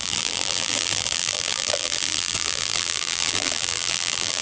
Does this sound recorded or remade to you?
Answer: remade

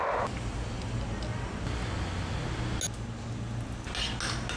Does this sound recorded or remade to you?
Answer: recorded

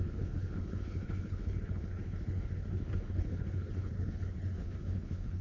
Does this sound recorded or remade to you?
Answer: remade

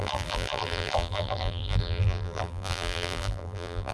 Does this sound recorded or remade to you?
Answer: remade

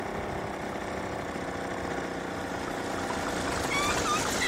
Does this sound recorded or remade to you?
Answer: recorded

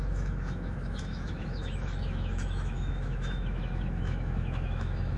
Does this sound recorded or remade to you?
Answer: remade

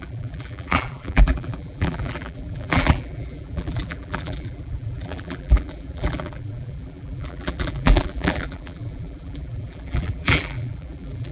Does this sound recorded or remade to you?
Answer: remade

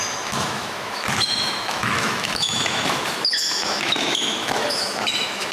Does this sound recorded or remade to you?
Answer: remade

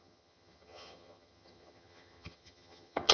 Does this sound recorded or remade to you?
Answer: remade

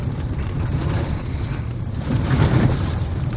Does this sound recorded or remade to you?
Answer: remade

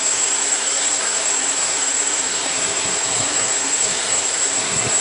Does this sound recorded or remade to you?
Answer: remade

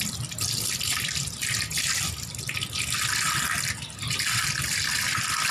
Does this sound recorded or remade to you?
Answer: recorded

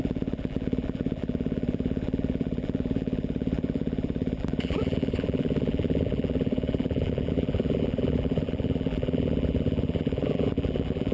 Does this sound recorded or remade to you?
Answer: remade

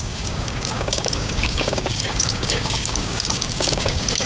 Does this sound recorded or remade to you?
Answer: remade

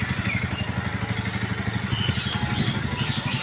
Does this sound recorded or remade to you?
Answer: recorded